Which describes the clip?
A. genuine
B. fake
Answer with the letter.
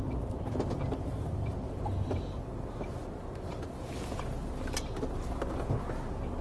A